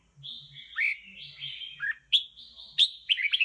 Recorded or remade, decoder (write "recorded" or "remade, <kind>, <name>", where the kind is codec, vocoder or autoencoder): recorded